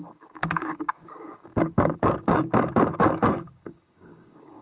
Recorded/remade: remade